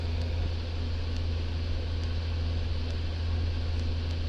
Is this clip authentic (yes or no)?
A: yes